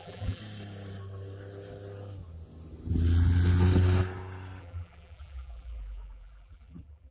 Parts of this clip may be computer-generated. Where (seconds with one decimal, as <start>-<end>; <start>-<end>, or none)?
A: 0.0-0.4; 4.6-7.1